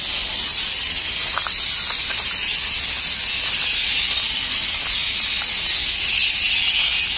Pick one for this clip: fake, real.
real